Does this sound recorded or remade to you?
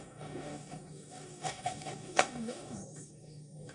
remade